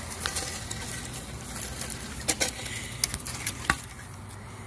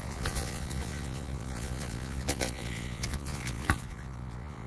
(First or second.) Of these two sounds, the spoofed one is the second